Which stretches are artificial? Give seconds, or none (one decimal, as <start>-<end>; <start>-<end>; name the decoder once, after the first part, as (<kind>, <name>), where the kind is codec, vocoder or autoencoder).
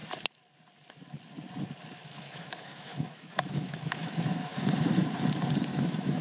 2.0-4.5 (autoencoder, DAC-VAE); 5.6-6.2